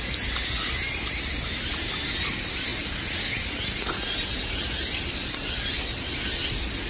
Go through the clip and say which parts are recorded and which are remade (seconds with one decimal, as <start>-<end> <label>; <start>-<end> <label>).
0.0-6.9 recorded